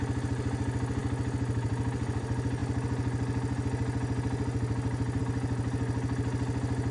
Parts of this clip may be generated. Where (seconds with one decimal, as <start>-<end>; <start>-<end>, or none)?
none